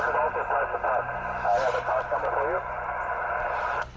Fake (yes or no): no